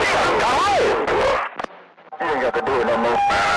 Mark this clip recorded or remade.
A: recorded